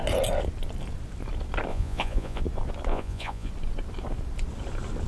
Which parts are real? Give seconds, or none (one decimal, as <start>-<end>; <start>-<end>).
0.0-1.7; 2.4-2.9; 3.5-5.1